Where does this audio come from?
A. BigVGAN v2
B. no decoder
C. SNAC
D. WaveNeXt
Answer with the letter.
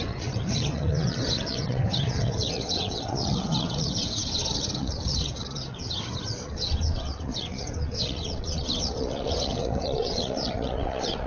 D